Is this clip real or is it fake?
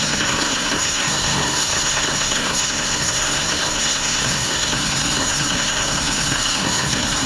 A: fake